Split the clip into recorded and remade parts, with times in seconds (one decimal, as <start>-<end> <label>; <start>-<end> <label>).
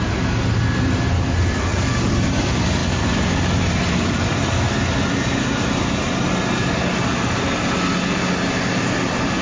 0.0-9.4 recorded